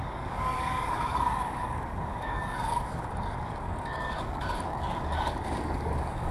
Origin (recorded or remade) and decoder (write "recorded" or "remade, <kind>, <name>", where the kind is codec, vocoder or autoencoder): remade, codec, DAC